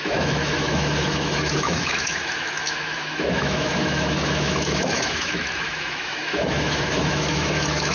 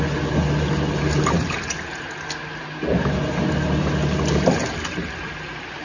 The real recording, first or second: second